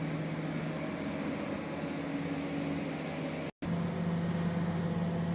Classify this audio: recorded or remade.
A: recorded